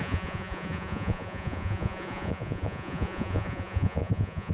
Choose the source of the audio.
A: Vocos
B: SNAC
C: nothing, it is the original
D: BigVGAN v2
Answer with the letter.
A